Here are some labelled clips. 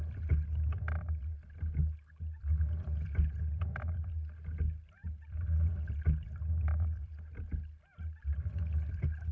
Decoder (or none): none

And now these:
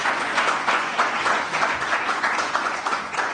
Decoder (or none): vocoder, Vocos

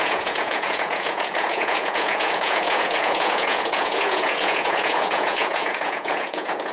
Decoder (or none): vocoder, Vocos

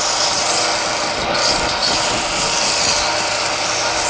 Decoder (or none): none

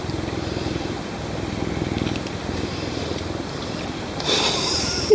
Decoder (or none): vocoder, BigVGAN v2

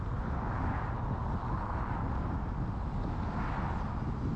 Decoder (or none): none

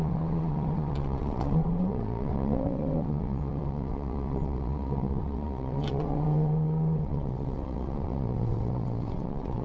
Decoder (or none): vocoder, WaveNeXt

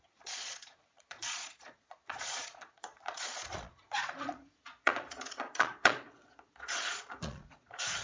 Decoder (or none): vocoder, Vocos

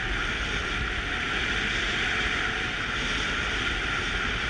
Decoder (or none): none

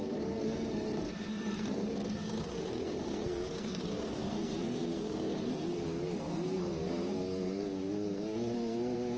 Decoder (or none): codec, SNAC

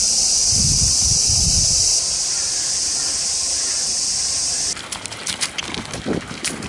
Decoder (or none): none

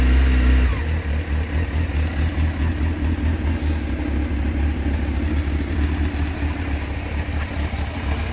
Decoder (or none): none